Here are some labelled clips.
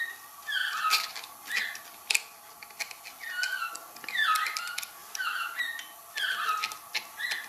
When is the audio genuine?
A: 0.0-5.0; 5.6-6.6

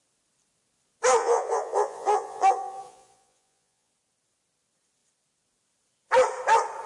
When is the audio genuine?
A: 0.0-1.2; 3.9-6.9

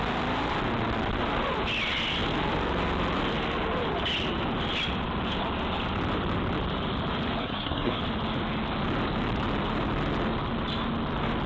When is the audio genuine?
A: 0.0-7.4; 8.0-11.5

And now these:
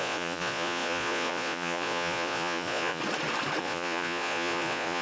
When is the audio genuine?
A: 3.0-3.6